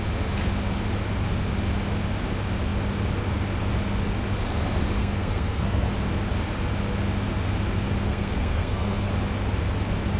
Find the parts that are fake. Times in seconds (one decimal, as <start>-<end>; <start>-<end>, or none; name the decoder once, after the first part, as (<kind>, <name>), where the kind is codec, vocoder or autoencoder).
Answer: 5.0-5.9 (codec, SNAC); 8.1-9.1